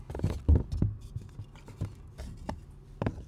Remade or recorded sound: recorded